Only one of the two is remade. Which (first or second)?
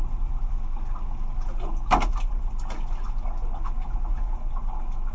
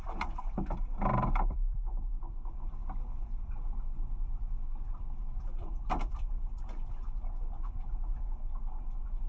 second